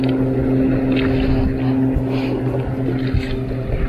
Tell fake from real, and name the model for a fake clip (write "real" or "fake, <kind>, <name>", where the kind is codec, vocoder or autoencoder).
real